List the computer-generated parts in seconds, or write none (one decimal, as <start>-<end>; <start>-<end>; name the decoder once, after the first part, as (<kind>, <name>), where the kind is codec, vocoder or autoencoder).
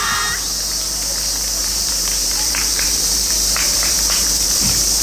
1.6-4.6 (vocoder, BigVGAN v2)